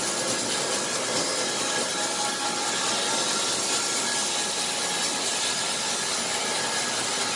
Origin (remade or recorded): recorded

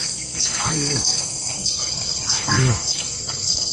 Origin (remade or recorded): remade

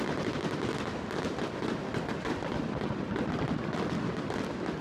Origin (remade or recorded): recorded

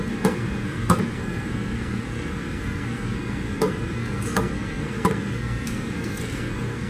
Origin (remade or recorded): remade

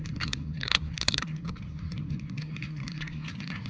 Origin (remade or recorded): remade